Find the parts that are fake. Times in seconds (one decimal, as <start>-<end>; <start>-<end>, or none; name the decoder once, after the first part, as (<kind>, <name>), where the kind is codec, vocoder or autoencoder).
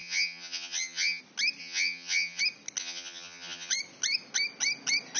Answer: 0.0-1.2 (vocoder, HiFi-GAN); 1.6-2.4; 2.8-3.7